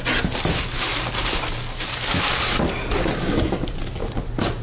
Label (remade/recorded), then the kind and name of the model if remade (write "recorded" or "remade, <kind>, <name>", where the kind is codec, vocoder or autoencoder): recorded